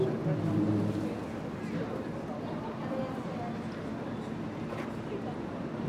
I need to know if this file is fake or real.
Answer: real